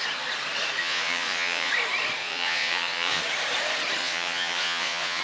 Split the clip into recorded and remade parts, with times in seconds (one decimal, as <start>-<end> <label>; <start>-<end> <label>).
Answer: 0.0-0.8 recorded; 0.8-1.7 remade; 1.7-2.2 recorded; 2.2-3.2 remade; 3.2-4.0 recorded; 4.0-5.2 remade